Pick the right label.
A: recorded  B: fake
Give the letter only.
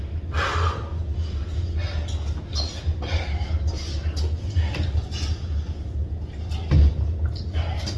A